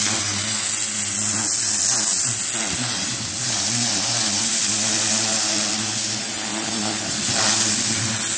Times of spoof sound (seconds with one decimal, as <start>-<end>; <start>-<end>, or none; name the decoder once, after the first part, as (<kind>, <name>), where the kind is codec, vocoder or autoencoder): 6.5-7.4 (vocoder, BigVGAN v2)